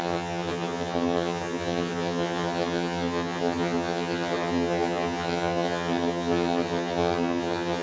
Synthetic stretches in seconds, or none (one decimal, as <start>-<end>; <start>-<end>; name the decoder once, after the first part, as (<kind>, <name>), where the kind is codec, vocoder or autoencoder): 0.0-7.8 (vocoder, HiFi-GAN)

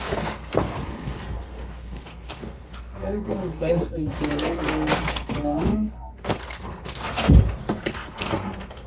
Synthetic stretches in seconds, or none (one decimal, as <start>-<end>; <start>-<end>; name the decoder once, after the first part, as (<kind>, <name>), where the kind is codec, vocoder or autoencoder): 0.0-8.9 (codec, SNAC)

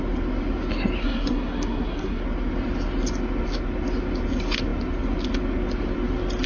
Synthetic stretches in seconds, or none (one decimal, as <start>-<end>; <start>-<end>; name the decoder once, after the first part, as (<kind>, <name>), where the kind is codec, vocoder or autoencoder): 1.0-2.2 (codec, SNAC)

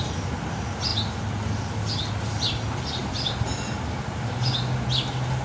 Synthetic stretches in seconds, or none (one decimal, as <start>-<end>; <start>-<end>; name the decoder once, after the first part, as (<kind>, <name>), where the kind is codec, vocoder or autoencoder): 0.9-3.9 (vocoder, BigVGAN v2)

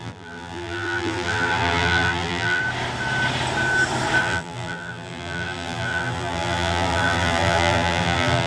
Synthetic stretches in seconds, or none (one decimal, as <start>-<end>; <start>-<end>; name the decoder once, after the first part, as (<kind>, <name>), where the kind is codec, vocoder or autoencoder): 0.0-2.6 (vocoder, BigVGAN v2); 4.2-8.5

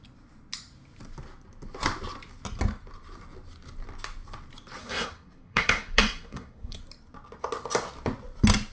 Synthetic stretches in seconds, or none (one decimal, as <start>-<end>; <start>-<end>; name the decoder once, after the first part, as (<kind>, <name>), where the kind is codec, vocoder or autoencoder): 4.8-6.8 (codec, SNAC)

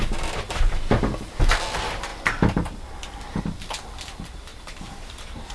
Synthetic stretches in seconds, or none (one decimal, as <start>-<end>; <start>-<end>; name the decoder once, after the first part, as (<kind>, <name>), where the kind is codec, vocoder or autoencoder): 4.5-5.5 (vocoder, BigVGAN v2)